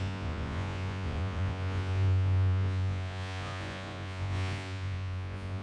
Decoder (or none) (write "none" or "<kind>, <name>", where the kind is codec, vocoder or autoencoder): vocoder, Vocos